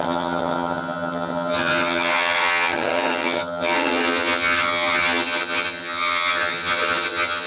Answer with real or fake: fake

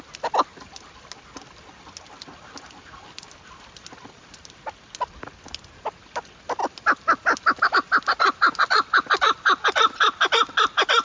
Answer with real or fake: real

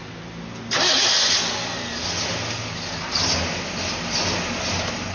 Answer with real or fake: real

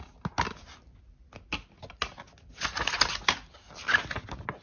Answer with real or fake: real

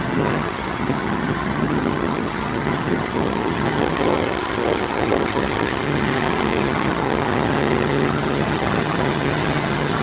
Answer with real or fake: fake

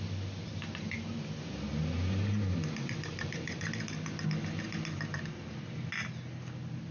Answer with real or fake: real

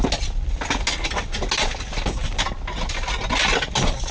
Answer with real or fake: real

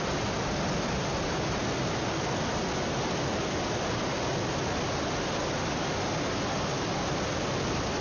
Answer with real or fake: real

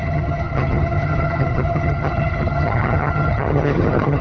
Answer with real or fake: fake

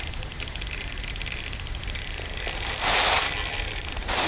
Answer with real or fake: real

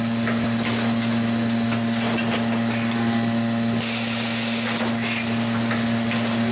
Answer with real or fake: real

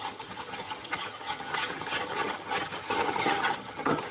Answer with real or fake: fake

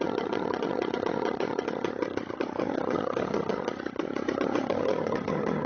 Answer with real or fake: fake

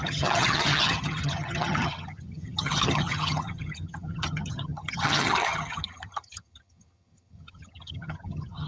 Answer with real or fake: fake